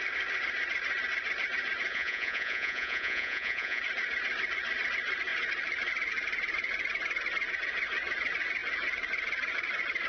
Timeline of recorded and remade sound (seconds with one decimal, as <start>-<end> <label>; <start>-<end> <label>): 0.0-1.9 recorded; 1.9-3.8 remade; 3.8-10.1 recorded